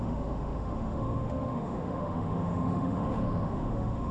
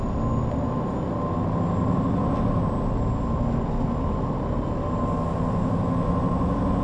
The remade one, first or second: first